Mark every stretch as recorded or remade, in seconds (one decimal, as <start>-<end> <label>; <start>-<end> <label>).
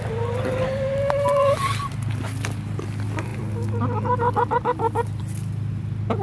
0.0-6.2 recorded